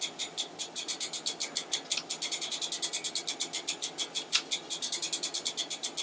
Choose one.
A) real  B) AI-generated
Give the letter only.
A